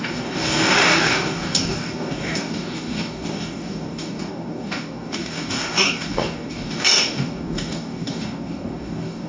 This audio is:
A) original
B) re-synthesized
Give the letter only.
B